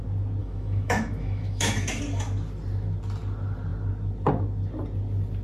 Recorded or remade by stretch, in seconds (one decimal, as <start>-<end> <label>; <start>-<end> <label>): 0.0-0.4 recorded; 0.4-2.0 remade; 2.0-5.4 recorded